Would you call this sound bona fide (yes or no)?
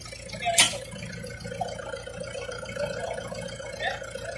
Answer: yes